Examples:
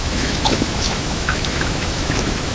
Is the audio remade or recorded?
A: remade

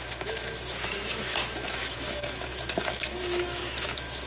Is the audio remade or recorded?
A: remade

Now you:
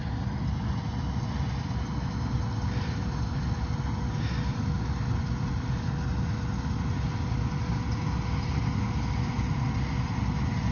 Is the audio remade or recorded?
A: recorded